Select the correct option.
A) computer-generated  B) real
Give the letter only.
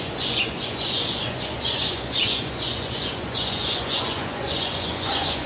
A